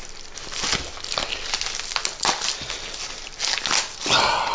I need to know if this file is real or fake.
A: real